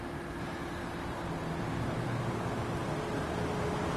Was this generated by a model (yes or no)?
no